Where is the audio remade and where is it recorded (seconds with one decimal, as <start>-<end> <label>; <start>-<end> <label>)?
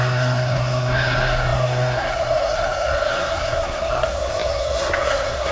0.0-5.5 remade